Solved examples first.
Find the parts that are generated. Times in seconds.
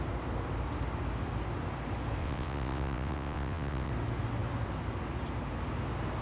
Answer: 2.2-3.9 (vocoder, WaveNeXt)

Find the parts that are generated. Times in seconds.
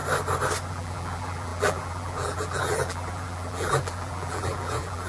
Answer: 0.7-5.1 (vocoder, BigVGAN v2)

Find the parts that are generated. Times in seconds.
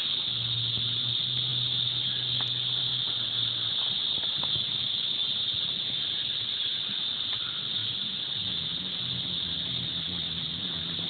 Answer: none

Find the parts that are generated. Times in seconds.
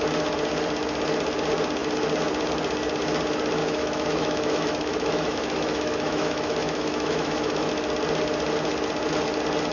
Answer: 3.6-7.7 (autoencoder, DAC-VAE)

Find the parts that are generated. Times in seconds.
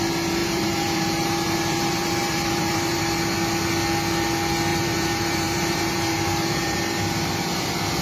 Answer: 0.4-3.0 (vocoder, BigVGAN v2); 4.7-6.8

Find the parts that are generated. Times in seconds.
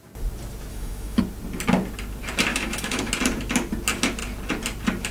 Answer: 0.7-1.2 (autoencoder, DAC-VAE); 2.5-3.1